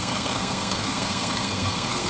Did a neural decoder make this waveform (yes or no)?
yes